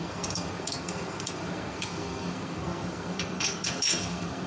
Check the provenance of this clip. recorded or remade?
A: remade